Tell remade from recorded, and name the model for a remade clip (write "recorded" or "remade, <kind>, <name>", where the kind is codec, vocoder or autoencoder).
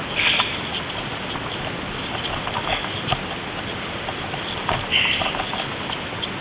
recorded